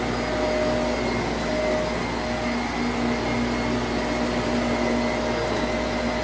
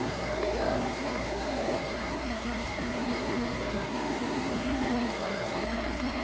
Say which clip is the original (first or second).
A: first